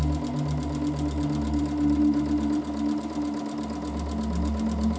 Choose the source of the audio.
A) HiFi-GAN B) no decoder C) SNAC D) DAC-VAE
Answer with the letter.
B